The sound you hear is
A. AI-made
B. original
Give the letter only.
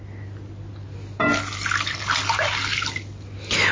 B